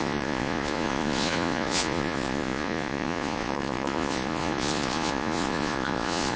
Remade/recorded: remade